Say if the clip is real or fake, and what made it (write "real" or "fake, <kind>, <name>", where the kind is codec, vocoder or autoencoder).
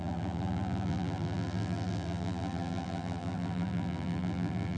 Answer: fake, vocoder, BigVGAN v2